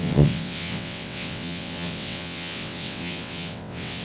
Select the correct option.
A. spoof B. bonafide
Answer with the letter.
A